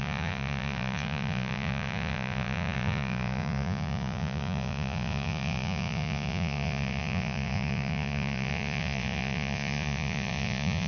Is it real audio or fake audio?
fake